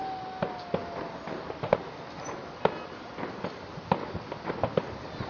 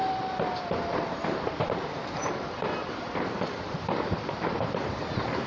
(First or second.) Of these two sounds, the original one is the first